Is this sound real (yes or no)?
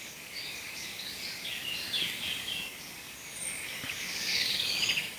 no